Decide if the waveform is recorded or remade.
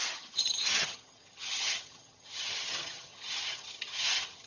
remade